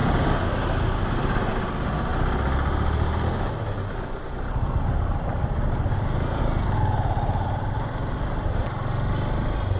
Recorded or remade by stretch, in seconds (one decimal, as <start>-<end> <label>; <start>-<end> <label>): 0.0-9.8 recorded